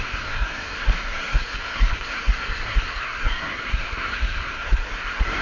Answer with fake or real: fake